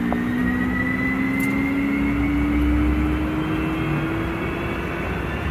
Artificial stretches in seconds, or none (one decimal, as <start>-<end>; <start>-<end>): none